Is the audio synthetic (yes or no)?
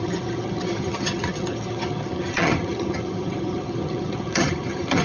yes